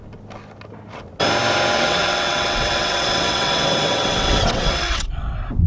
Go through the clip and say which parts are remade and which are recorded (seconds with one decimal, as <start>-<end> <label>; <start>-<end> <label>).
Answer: 0.0-1.7 recorded; 1.7-5.1 remade; 5.1-5.7 recorded